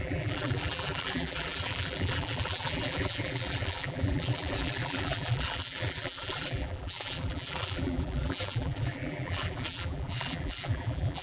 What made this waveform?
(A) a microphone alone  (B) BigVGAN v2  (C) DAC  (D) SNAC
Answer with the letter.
B